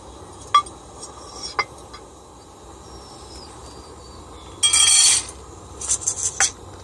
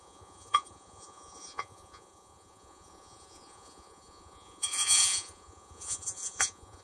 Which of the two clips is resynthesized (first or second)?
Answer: second